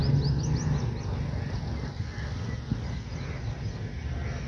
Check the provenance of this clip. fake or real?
real